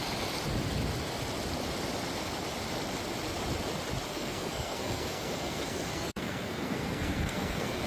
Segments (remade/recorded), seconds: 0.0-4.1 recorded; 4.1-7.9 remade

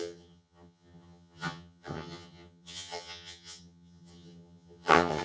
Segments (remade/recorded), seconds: 0.0-5.2 remade